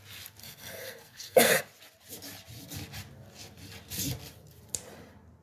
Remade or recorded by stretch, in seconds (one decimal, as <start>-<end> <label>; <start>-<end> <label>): 0.0-0.4 recorded; 0.4-1.6 remade; 1.6-5.4 recorded